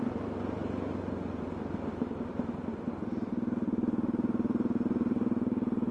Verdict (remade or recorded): recorded